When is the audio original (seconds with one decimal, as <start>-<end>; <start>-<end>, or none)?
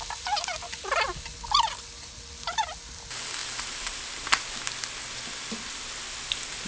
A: 0.0-6.7